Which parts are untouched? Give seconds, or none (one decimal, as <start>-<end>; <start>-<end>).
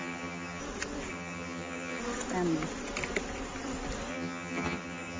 0.6-1.1; 2.0-4.1